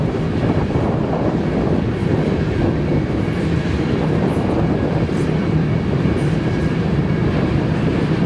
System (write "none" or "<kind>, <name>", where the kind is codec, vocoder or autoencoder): vocoder, BigVGAN v2